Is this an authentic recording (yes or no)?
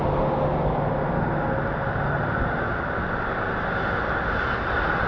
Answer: yes